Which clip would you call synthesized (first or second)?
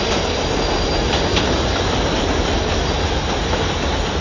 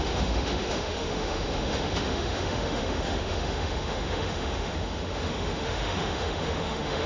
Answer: second